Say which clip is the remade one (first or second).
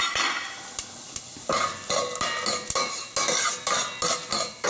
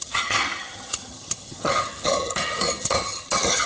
second